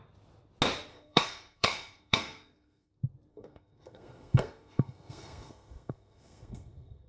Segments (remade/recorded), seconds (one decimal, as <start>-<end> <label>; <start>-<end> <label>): 0.0-0.9 recorded; 0.9-2.9 remade; 2.9-3.3 recorded; 3.3-7.1 remade